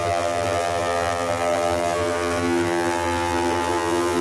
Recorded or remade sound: remade